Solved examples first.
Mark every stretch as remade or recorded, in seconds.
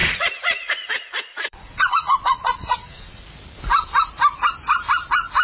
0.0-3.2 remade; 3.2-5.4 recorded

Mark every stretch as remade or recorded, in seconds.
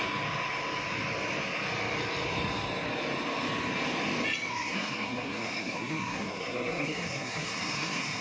0.0-4.5 recorded; 4.5-8.2 remade